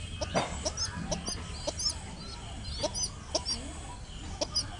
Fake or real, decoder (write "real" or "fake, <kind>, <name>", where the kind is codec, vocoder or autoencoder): real